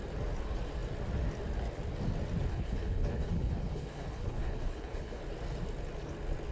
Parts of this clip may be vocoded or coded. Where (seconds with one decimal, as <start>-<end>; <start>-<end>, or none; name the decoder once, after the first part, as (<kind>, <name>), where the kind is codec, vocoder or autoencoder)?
2.5-5.2 (codec, HILCodec)